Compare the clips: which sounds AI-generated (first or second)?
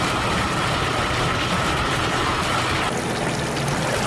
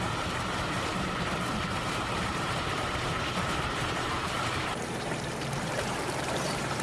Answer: second